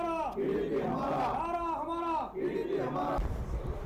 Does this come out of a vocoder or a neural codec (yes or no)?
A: no